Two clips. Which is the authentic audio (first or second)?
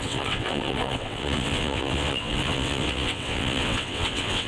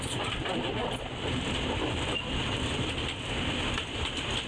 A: second